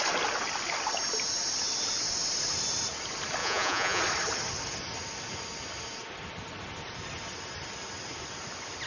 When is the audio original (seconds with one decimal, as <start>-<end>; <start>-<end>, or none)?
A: 0.0-3.4; 4.0-8.9